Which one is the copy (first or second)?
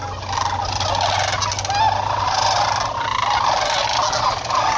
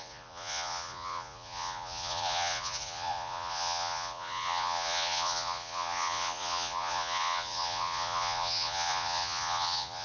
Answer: second